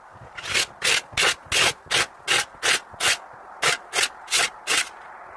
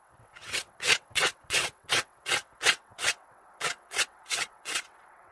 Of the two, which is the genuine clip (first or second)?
first